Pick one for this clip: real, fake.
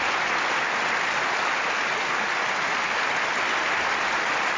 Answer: real